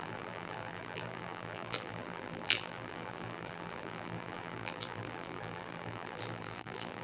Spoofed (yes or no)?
yes